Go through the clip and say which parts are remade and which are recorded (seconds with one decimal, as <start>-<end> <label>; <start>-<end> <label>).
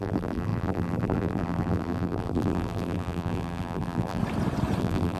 0.0-4.2 remade; 4.2-4.8 recorded; 4.8-5.2 remade